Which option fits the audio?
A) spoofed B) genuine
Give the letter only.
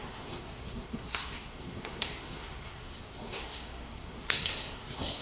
A